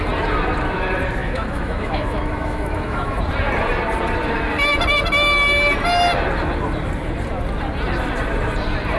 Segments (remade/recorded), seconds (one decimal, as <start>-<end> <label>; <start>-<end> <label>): 0.0-1.2 recorded; 1.2-3.2 remade; 3.2-9.0 recorded